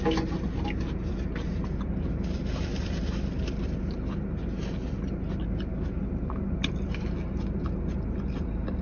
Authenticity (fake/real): real